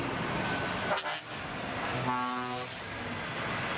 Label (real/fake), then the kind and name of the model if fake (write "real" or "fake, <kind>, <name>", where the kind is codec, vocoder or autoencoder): real